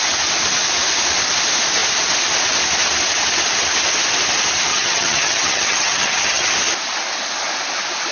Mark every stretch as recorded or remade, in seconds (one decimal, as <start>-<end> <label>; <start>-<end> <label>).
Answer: 0.0-4.7 recorded; 4.7-6.5 remade; 6.5-8.1 recorded